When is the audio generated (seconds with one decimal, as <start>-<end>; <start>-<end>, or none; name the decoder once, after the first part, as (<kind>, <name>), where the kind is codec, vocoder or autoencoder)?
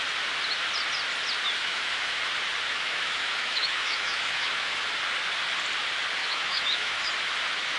1.6-2.2 (autoencoder, DAC-VAE); 2.7-4.9; 6.2-7.1